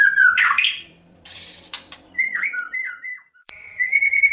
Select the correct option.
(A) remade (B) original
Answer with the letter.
A